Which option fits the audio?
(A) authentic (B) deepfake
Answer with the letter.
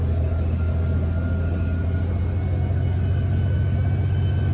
A